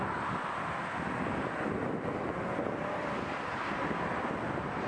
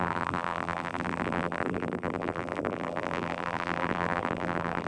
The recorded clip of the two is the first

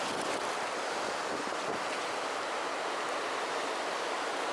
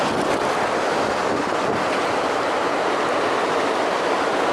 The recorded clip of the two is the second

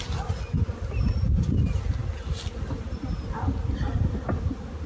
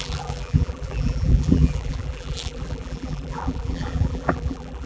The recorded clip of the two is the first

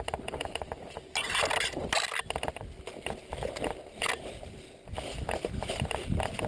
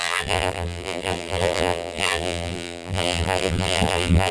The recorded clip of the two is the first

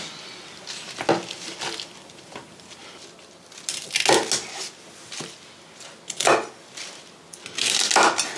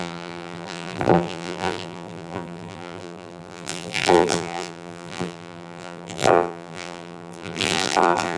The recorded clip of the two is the first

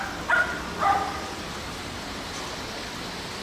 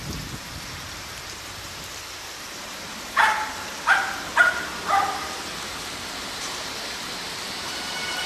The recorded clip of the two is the first